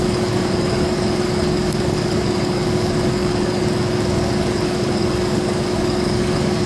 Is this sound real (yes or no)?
no